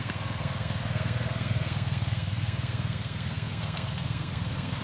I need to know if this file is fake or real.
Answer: fake